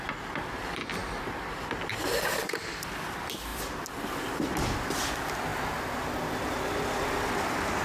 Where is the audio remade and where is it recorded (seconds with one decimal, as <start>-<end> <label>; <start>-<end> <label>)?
0.0-5.5 remade; 5.5-7.8 recorded